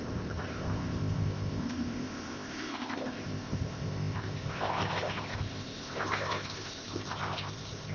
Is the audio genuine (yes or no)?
no